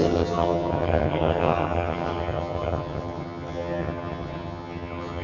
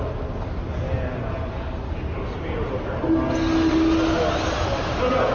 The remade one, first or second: first